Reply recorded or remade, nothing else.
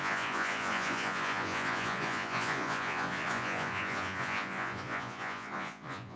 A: remade